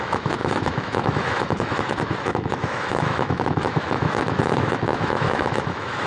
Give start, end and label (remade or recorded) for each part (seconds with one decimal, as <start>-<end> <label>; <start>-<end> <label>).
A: 0.0-6.1 remade

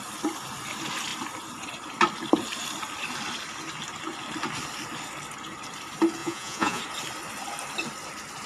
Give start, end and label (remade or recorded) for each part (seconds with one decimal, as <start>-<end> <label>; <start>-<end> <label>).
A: 0.0-6.2 recorded; 6.2-6.8 remade; 6.8-8.5 recorded

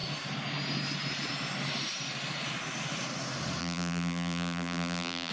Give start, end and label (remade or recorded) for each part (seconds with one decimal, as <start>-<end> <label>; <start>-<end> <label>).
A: 0.0-3.6 recorded; 3.6-5.3 remade

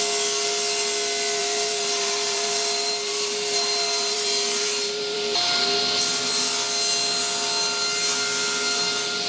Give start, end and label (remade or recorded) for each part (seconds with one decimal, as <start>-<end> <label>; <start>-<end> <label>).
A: 0.0-1.4 recorded; 1.4-5.6 remade; 5.6-9.3 recorded